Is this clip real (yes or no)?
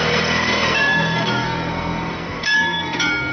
no